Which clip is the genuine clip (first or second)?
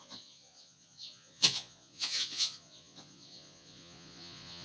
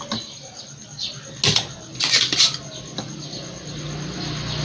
second